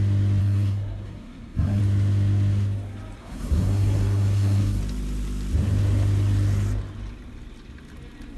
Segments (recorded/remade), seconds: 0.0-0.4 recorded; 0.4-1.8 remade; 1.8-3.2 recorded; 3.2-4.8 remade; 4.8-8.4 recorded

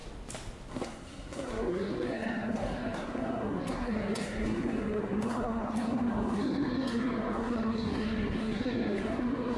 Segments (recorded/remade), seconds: 0.0-0.7 recorded; 0.7-9.6 remade

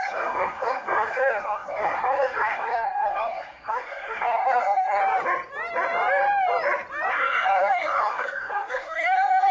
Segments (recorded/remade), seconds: 0.0-5.0 remade; 5.0-7.1 recorded; 7.1-9.5 remade

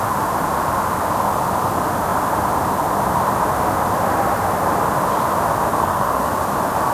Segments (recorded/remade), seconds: 0.0-5.7 recorded; 5.7-6.3 remade; 6.3-6.9 recorded

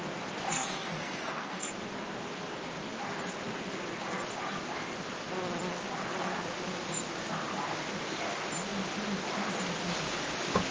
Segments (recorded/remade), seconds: 0.0-0.5 recorded; 0.5-1.7 remade; 1.7-10.7 recorded